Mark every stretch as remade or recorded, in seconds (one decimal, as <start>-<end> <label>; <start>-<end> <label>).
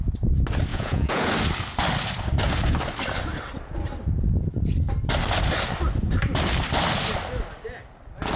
0.0-0.7 recorded; 0.7-1.3 remade; 1.3-8.4 recorded